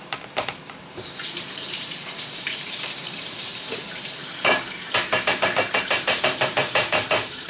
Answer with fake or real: fake